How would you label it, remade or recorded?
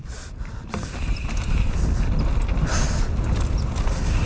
recorded